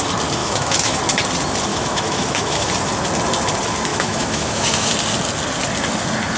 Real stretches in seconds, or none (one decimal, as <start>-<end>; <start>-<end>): 0.0-0.4; 1.0-1.7; 2.7-3.9; 4.9-6.4